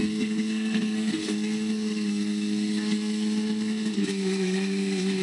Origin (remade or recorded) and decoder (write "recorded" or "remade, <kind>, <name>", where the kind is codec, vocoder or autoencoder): remade, codec, SNAC